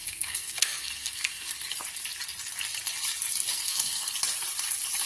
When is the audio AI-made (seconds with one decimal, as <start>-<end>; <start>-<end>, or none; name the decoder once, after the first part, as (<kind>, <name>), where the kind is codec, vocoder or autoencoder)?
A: 0.0-1.6 (codec, SNAC); 3.5-4.1